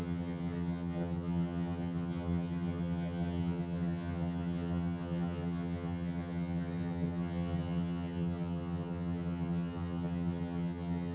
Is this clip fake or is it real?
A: fake